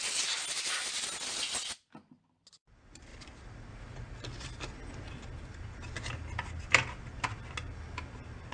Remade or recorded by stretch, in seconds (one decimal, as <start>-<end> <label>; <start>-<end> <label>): 0.0-8.5 recorded